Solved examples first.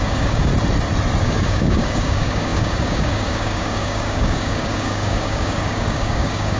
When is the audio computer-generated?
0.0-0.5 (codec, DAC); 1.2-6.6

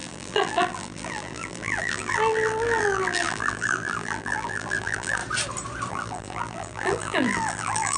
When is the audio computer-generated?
0.0-5.2 (vocoder, BigVGAN v2); 5.9-8.0

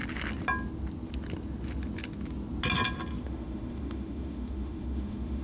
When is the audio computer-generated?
3.2-5.4 (autoencoder, DAC-VAE)

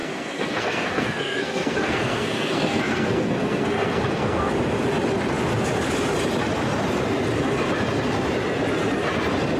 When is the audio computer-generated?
0.0-4.5 (codec, SNAC)